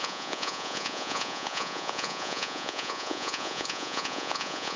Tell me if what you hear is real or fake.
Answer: fake